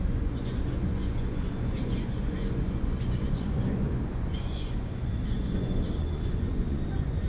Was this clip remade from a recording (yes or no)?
yes